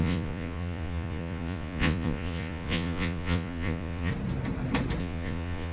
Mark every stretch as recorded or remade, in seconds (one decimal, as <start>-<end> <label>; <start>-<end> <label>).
0.0-4.1 remade; 4.1-5.0 recorded; 5.0-5.7 remade